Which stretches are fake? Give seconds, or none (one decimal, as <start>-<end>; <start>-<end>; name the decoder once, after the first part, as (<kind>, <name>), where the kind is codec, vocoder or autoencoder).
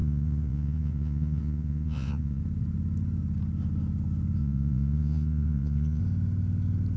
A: 0.0-2.4 (vocoder, Vocos); 4.4-6.0